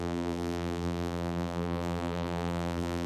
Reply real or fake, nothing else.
fake